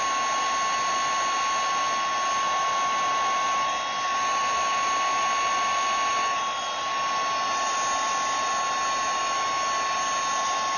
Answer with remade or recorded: recorded